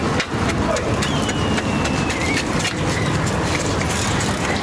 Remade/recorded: recorded